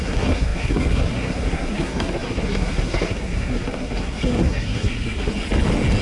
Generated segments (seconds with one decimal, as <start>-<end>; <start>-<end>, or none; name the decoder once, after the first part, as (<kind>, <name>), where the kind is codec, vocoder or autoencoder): 0.0-5.3 (codec, SNAC)